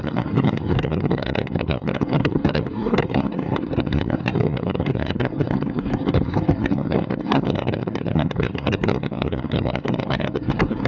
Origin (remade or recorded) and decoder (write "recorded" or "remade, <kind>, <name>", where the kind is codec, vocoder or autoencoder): remade, codec, SNAC